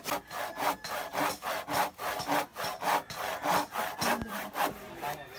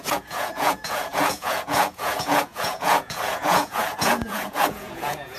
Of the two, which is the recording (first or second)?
first